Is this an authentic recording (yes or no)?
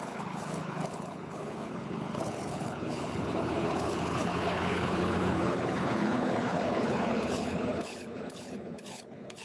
no